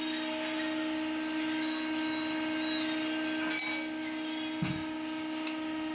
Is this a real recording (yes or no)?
yes